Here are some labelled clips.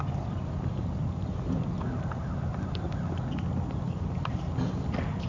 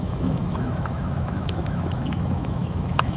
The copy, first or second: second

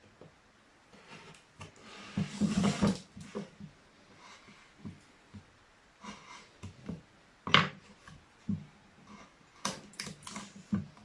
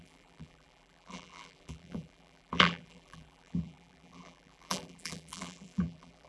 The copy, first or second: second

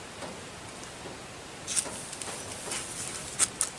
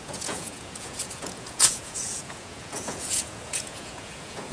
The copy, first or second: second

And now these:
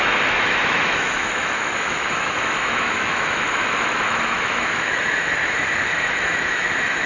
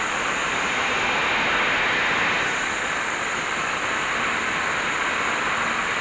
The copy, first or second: first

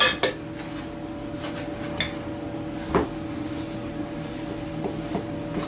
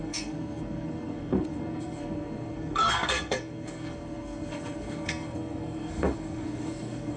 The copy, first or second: second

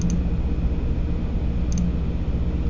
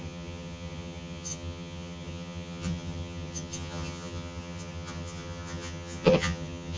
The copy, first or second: second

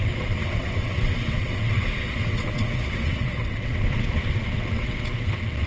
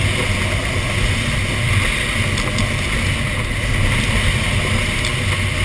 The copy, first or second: first